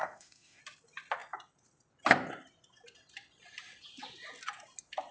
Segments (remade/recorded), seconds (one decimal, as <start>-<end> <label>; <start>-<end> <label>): 0.0-0.6 remade; 0.6-5.1 recorded

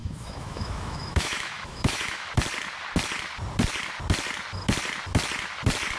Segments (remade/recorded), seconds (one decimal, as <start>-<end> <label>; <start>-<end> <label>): 0.0-2.3 remade; 2.3-6.0 recorded

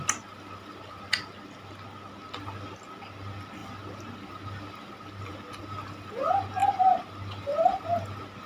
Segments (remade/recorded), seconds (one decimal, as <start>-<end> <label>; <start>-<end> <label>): 0.0-8.5 recorded